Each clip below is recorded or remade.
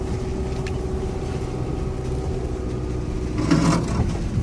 recorded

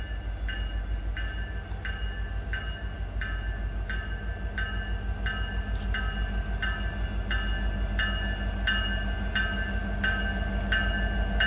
recorded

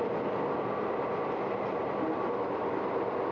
recorded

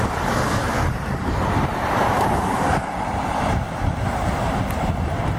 remade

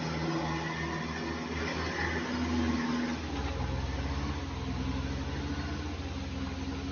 recorded